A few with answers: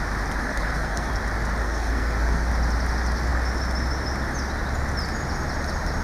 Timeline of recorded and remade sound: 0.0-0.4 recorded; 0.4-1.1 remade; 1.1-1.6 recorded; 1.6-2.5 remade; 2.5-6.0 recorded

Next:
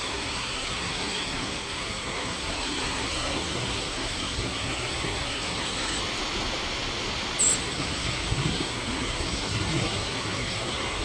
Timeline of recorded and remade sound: 0.0-6.0 remade; 6.0-7.6 recorded; 7.6-11.0 remade

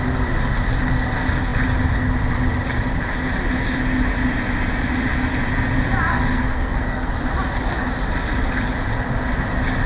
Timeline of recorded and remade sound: 0.0-6.1 recorded; 6.1-7.1 remade; 7.1-9.9 recorded

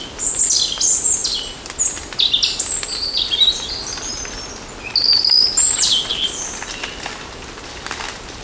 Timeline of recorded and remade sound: 0.0-8.4 recorded

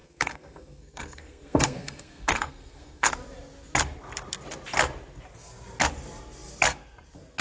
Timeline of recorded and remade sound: 0.0-3.1 remade; 3.1-7.4 recorded

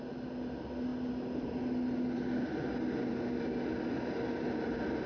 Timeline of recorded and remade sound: 0.0-5.1 recorded